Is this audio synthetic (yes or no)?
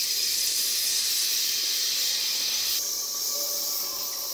yes